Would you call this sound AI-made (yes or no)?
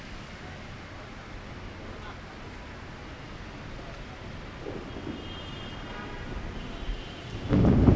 no